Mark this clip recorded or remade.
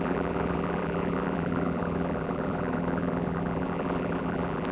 remade